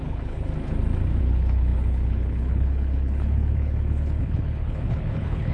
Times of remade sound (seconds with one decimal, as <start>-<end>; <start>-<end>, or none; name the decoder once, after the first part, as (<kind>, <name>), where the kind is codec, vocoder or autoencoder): 0.0-0.5 (codec, HILCodec); 1.2-5.5